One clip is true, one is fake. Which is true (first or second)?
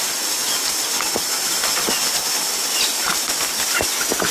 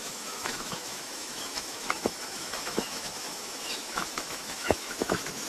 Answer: first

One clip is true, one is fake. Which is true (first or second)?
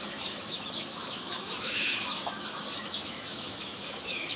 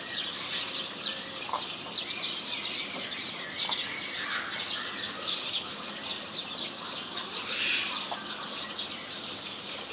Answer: second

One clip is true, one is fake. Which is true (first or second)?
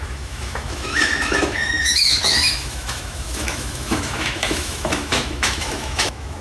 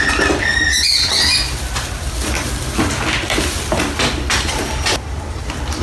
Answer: second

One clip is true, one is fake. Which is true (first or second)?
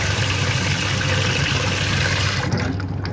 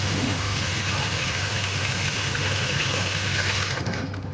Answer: first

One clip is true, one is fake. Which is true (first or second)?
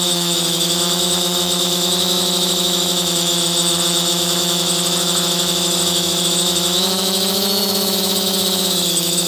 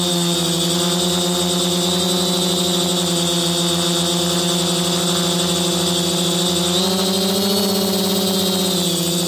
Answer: second